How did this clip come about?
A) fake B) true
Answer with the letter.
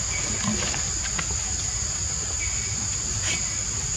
B